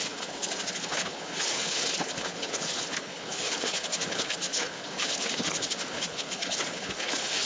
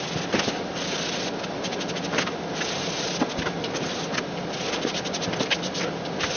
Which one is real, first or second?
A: second